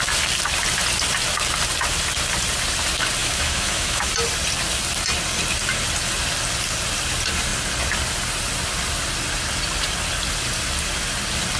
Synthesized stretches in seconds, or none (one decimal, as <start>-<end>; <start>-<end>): 3.2-4.1